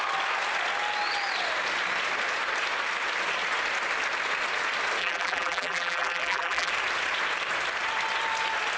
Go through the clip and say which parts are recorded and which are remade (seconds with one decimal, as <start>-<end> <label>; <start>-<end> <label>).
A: 0.0-5.0 recorded; 5.0-6.7 remade; 6.7-8.8 recorded